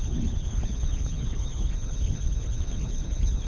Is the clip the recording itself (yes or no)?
no